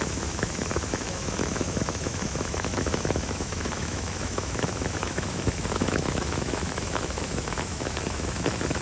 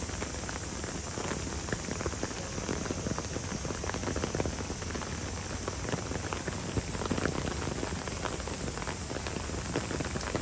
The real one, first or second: second